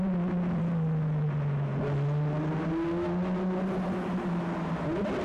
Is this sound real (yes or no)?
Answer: yes